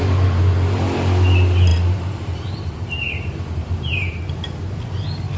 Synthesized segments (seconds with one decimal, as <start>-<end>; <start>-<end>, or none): 1.7-4.3